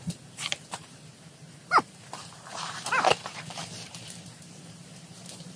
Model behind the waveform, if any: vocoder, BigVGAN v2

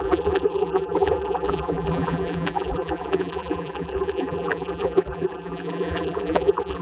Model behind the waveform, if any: vocoder, BigVGAN v2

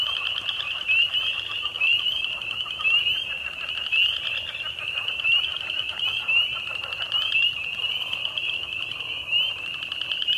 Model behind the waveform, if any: none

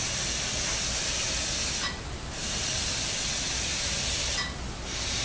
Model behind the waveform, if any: none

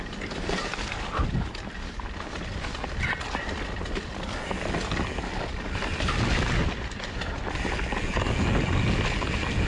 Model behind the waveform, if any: none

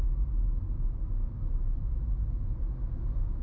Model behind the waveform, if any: none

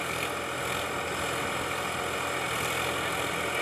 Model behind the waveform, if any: none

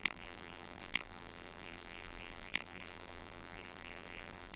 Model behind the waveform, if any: vocoder, BigVGAN v2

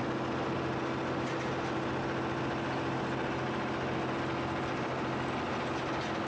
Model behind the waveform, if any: none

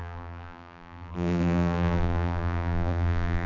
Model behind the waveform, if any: vocoder, BigVGAN v2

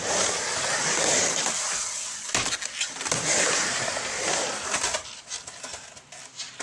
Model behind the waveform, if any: none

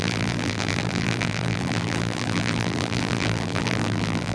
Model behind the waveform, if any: vocoder, BigVGAN v2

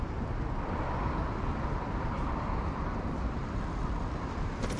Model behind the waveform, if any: vocoder, BigVGAN v2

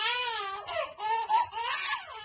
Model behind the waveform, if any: none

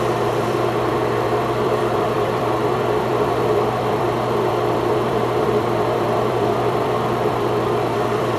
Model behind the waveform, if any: vocoder, BigVGAN v2